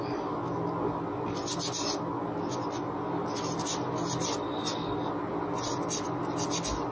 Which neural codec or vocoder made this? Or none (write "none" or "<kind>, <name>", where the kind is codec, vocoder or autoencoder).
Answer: none